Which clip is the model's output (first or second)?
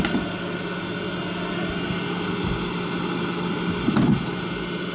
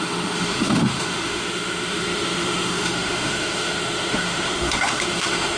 second